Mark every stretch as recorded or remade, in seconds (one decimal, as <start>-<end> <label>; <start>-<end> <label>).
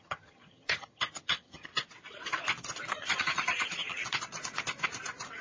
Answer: 0.0-1.7 remade; 1.7-2.9 recorded; 2.9-4.0 remade; 4.0-5.4 recorded